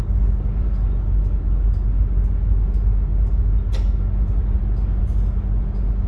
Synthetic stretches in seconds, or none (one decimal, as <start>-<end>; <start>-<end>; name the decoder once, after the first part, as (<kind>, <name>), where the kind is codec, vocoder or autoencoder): none